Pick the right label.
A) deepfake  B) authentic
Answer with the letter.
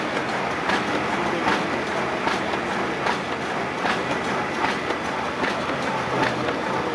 B